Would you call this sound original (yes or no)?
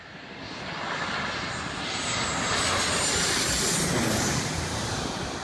yes